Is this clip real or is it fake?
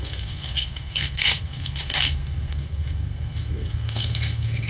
fake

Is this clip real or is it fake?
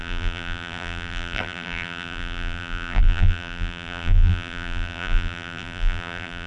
fake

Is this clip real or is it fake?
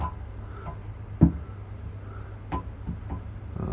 real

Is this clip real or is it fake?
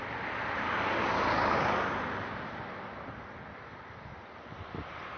real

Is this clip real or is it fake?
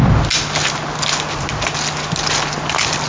real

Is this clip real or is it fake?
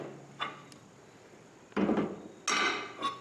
real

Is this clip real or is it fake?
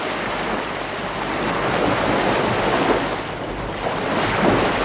real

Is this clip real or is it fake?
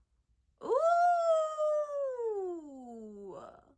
real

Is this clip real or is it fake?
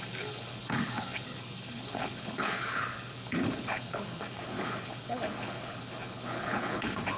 fake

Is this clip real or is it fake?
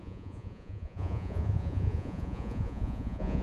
fake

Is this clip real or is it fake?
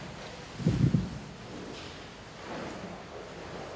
real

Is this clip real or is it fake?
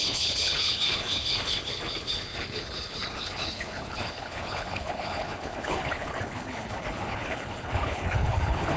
fake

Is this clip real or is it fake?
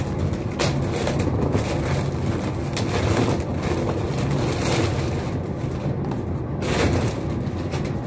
real